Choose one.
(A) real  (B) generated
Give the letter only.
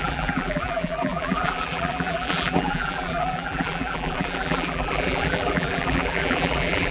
B